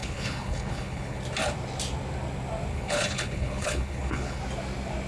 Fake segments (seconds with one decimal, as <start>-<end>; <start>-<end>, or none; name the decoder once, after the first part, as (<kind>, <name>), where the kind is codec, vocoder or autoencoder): 0.0-1.2 (codec, HILCodec); 2.7-4.4